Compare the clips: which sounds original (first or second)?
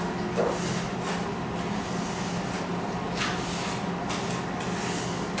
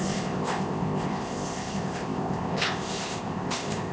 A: first